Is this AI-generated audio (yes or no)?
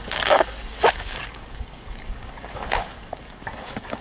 yes